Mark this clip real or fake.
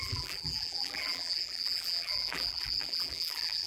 fake